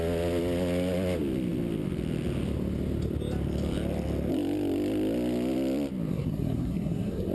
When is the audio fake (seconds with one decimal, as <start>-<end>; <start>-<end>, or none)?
6.1-7.3